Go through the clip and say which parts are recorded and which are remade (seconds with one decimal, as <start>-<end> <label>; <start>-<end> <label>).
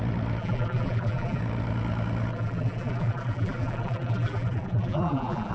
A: 0.0-0.4 recorded; 0.4-1.4 remade; 1.4-2.3 recorded; 2.3-5.5 remade